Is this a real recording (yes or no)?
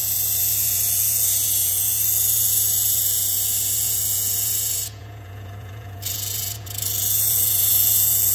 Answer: no